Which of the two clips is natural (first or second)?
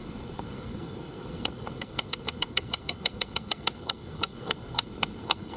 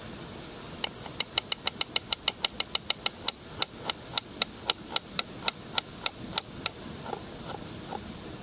second